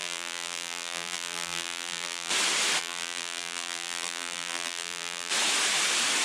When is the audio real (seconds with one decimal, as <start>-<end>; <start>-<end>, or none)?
2.3-2.8; 5.3-6.2